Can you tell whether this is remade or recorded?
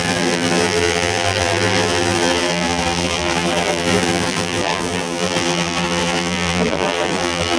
remade